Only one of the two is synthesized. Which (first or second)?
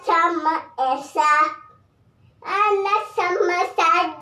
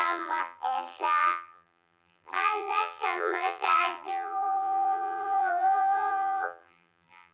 second